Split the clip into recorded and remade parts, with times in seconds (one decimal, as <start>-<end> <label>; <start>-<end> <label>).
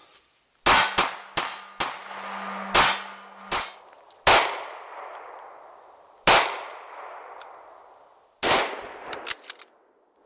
0.0-10.3 recorded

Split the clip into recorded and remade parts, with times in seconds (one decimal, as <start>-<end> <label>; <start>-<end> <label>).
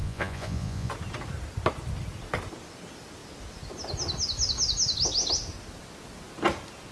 0.0-0.9 remade; 0.9-6.9 recorded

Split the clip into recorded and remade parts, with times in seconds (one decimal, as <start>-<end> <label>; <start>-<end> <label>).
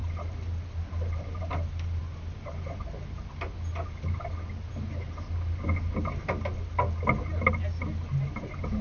0.0-8.8 recorded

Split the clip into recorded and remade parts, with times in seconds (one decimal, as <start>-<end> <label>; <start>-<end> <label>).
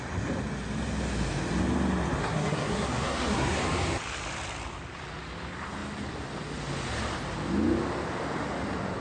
0.0-2.2 recorded; 2.2-3.6 remade; 3.6-9.0 recorded